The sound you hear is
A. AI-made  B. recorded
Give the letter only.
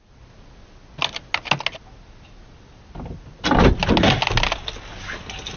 B